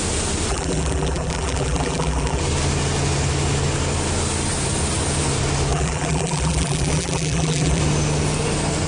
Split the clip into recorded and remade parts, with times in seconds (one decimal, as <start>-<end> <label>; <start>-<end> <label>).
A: 0.0-0.5 recorded; 0.5-2.4 remade; 2.4-5.7 recorded; 5.7-7.8 remade; 7.8-8.9 recorded